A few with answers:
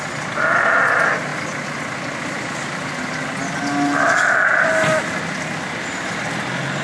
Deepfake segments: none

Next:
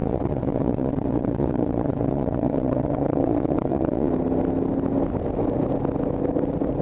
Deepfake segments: 0.0-4.1

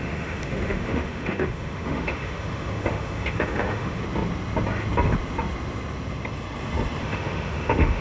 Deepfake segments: 0.0-4.0; 7.0-8.0

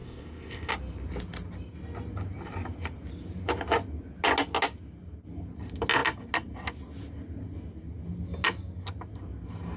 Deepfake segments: 0.0-0.7

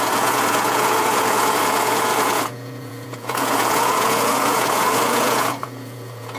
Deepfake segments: 0.0-6.4

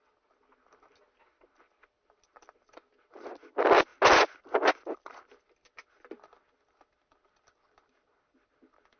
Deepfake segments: none